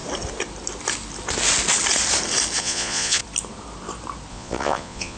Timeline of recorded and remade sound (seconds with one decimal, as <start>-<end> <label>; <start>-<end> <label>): 0.0-2.6 recorded; 2.6-3.2 remade; 3.2-4.3 recorded; 4.3-5.2 remade